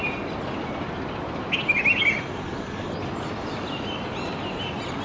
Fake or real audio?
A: real